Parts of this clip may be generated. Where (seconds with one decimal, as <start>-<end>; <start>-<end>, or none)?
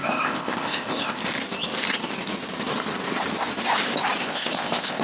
0.0-1.2; 4.2-5.0